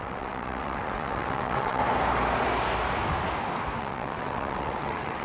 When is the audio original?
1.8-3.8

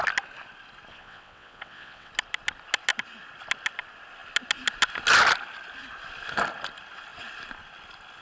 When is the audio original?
0.0-0.9; 2.1-8.2